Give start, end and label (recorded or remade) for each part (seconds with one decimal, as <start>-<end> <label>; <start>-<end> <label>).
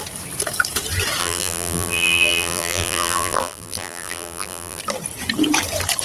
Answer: 0.0-1.2 recorded; 1.2-4.8 remade; 4.8-6.0 recorded